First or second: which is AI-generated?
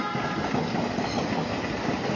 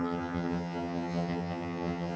second